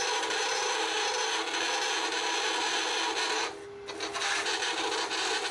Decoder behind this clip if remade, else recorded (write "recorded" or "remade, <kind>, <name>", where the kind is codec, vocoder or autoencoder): recorded